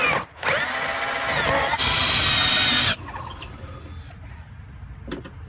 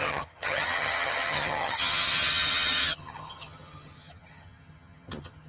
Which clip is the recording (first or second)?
first